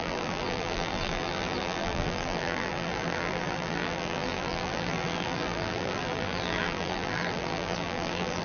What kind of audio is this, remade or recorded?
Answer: remade